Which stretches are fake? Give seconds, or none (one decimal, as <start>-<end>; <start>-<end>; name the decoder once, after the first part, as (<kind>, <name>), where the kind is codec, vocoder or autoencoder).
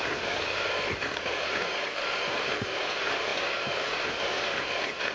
none